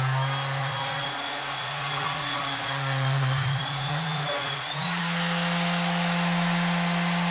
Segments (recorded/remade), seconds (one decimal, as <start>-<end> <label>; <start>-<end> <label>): 0.0-0.6 recorded; 0.6-5.0 remade; 5.0-7.3 recorded